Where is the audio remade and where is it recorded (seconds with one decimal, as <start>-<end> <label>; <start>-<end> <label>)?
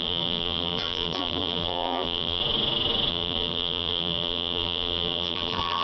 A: 0.0-2.4 remade; 2.4-3.1 recorded; 3.1-5.8 remade